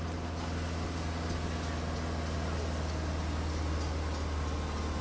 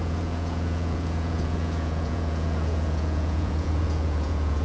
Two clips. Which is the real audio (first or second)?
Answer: first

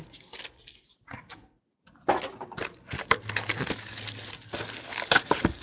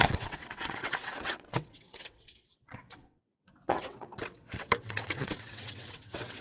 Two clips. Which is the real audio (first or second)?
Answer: first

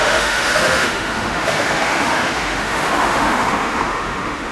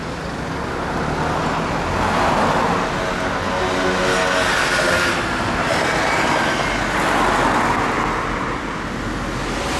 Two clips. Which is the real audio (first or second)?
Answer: second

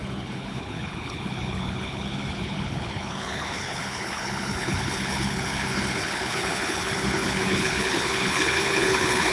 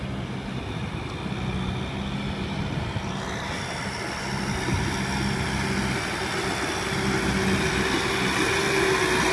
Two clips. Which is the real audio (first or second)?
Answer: second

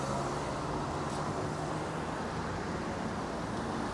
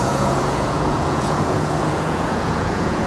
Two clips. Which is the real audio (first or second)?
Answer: first